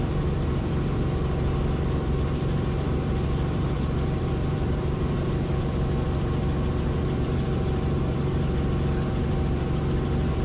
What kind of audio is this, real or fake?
fake